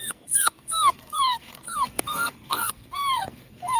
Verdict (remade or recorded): remade